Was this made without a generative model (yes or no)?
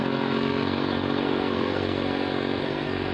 no